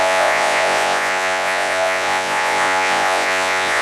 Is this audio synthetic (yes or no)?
yes